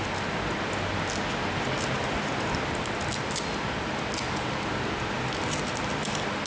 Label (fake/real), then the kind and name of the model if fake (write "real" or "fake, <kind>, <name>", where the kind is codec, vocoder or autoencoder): real